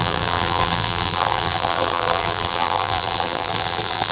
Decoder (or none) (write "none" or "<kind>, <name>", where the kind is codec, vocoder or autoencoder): vocoder, BigVGAN v2